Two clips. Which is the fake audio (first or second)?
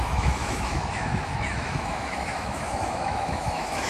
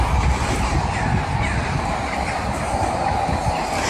first